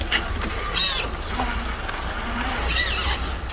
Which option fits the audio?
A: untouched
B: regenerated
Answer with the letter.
A